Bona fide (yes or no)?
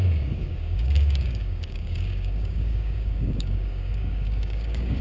no